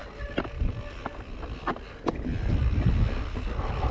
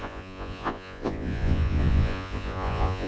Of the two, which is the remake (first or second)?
second